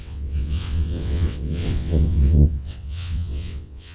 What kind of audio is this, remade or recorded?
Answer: remade